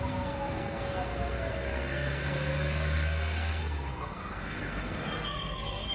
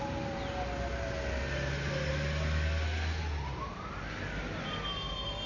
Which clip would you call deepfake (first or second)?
first